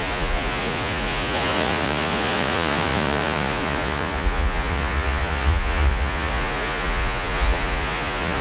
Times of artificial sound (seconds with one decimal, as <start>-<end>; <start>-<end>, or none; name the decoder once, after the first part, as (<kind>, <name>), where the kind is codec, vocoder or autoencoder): 0.0-8.4 (vocoder, Vocos)